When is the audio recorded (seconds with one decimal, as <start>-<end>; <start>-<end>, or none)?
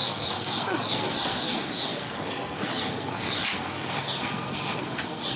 none